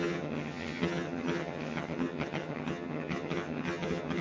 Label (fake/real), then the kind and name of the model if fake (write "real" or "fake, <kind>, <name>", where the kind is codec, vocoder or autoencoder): fake, vocoder, HiFi-GAN